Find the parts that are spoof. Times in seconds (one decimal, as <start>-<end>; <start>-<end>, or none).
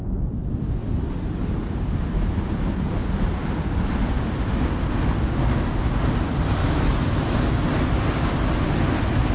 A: 6.6-7.4